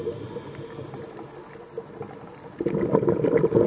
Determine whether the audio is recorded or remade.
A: recorded